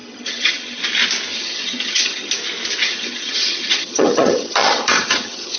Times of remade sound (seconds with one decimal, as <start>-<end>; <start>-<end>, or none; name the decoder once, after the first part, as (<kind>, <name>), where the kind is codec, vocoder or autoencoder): 0.0-0.8 (vocoder, HiFi-GAN); 1.3-2.3; 2.8-5.6